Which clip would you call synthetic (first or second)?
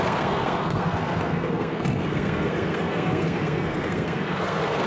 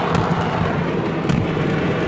first